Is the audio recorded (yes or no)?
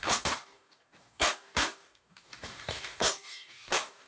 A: no